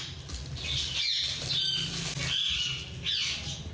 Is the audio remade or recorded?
recorded